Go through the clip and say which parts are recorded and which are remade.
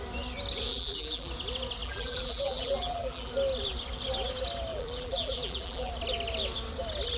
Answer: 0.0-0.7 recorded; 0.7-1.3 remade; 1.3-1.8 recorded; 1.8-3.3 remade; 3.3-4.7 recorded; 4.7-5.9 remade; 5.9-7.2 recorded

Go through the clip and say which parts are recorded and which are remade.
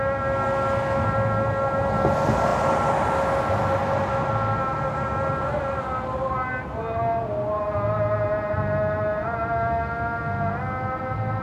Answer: 0.0-11.4 recorded